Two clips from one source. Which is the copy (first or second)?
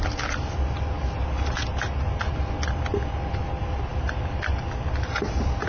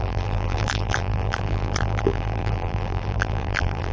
second